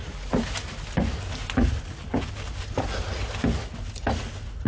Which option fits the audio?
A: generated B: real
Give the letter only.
B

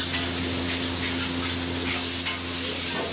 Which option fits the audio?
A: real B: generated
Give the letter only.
A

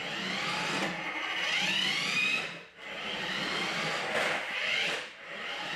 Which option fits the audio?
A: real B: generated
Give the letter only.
A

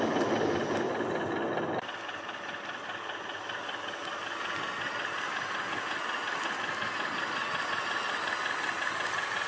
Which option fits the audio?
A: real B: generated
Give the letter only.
A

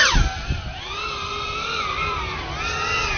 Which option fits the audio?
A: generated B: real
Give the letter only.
B